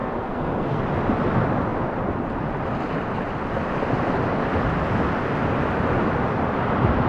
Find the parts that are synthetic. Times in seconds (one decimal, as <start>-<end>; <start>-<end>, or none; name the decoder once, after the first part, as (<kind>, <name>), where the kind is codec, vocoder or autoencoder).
0.0-0.8 (codec, SNAC)